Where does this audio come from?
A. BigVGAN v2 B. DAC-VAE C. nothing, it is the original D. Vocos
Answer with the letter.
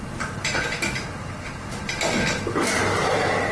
C